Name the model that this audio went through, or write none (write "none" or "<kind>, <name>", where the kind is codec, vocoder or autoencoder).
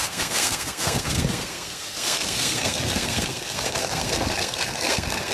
codec, SNAC